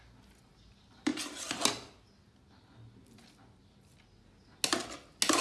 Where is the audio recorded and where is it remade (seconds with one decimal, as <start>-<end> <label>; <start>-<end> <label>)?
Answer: 0.0-5.4 recorded